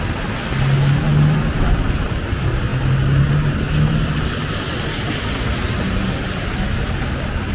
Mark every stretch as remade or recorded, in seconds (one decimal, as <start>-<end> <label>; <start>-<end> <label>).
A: 0.0-1.1 recorded; 1.1-2.0 remade; 2.0-7.5 recorded